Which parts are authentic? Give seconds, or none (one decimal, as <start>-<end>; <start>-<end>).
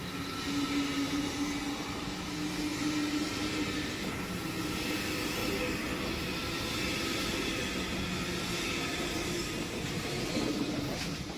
0.0-11.4